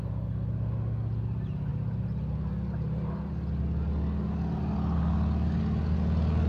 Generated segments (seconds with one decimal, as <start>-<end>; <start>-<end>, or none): none